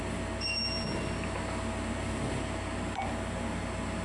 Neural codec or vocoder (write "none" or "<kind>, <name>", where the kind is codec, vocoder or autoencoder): none